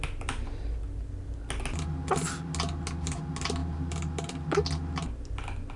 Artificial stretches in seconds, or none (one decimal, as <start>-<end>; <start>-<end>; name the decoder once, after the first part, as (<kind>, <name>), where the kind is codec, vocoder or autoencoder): none